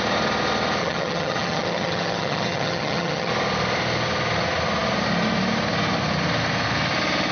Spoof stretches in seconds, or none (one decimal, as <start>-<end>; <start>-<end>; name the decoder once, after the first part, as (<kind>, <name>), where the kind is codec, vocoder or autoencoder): 0.8-3.3 (vocoder, HiFi-GAN)